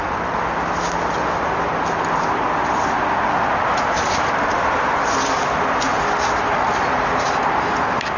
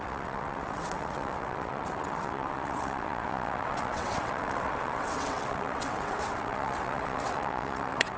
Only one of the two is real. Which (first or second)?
first